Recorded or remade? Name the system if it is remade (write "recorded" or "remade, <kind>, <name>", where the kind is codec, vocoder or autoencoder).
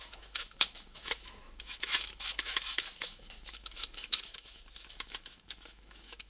remade, autoencoder, DAC-VAE